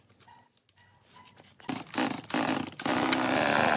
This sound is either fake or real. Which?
real